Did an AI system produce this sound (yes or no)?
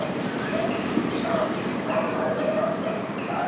yes